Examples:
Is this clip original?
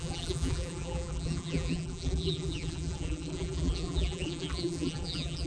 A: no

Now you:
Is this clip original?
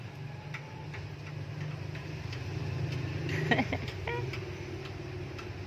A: yes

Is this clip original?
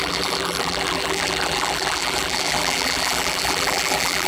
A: no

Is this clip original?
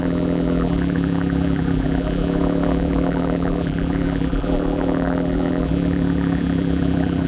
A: no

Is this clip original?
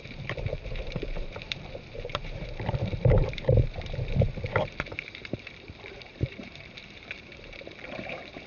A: no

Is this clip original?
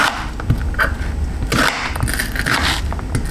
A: yes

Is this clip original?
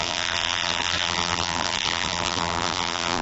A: no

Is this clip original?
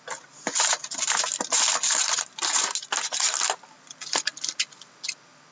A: yes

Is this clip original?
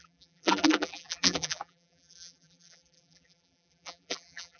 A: no